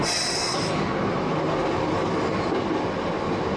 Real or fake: real